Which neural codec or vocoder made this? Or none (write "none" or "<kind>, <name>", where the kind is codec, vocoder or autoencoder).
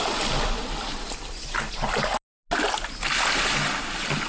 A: none